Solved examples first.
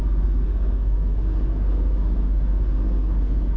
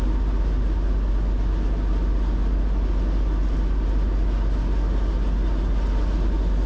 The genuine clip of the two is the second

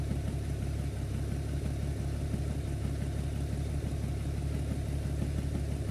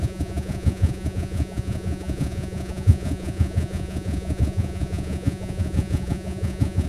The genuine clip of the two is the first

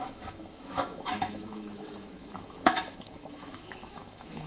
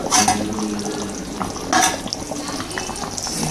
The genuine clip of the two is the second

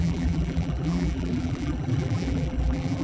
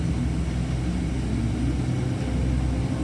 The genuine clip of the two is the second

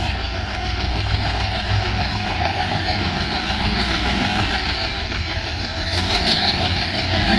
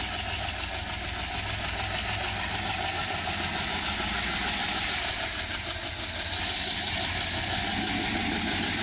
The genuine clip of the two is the second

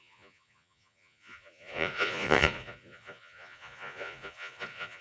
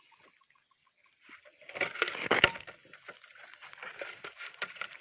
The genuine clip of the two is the second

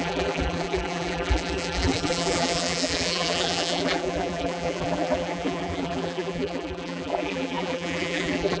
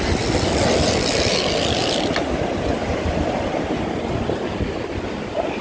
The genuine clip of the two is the second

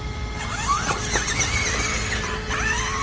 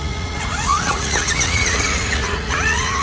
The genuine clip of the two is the first